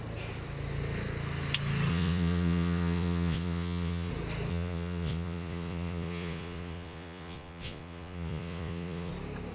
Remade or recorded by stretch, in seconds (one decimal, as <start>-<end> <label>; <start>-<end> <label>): 0.0-1.9 recorded; 1.9-4.1 remade; 4.1-4.5 recorded; 4.5-9.1 remade; 9.1-9.5 recorded